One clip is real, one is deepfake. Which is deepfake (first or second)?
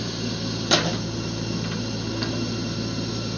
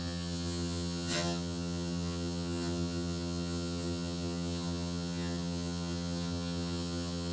second